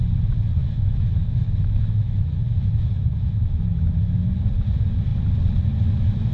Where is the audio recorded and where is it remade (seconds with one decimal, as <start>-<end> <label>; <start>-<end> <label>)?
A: 0.0-0.6 recorded; 0.6-4.4 remade; 4.4-6.3 recorded